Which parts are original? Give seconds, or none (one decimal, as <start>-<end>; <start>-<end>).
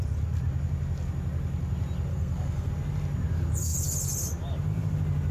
0.0-2.1; 2.7-5.3